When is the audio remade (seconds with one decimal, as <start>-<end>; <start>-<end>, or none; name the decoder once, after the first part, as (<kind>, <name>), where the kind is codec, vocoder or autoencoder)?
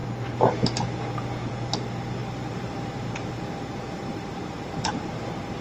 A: 2.2-5.6 (vocoder, BigVGAN v2)